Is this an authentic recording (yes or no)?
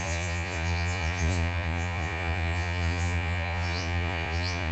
no